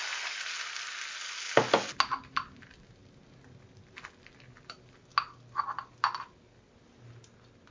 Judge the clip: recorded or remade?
recorded